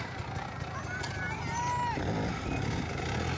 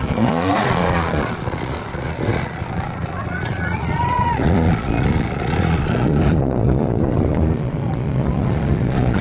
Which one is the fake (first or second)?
second